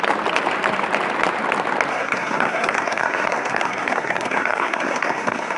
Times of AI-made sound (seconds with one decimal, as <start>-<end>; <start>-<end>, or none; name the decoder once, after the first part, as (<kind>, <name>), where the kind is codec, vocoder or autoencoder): 1.9-5.6 (codec, SNAC)

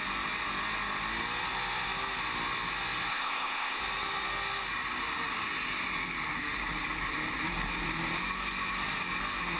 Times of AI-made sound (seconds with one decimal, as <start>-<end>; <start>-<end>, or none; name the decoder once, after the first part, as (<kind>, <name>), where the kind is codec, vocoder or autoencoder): 3.1-3.8 (codec, ZipCodec)